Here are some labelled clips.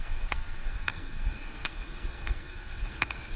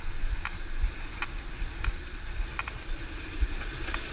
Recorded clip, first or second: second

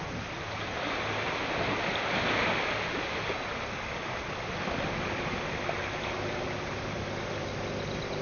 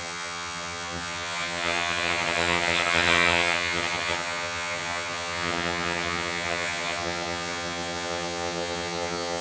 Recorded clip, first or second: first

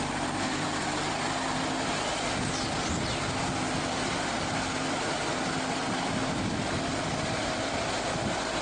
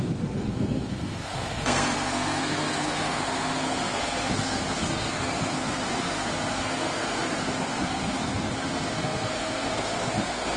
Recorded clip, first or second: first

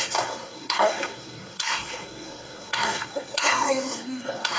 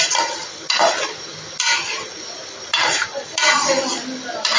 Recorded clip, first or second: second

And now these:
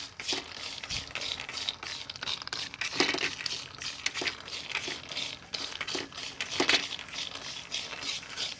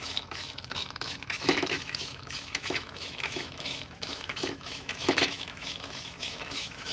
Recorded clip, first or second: first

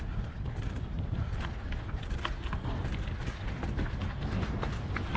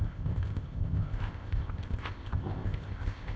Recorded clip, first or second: first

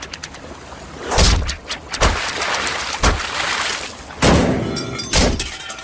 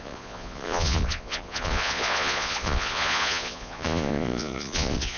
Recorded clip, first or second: first